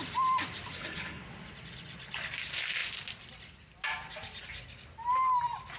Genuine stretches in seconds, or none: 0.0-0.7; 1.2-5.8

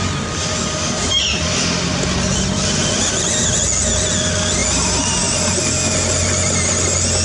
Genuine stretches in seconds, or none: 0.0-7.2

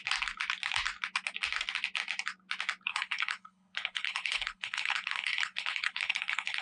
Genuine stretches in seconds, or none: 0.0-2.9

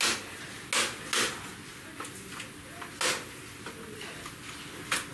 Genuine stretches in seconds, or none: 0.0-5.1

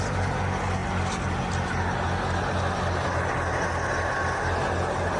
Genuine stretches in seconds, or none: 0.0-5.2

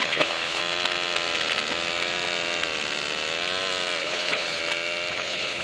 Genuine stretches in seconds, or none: 0.6-4.0; 4.6-5.1

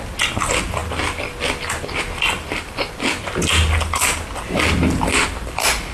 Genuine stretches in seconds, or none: 0.0-5.9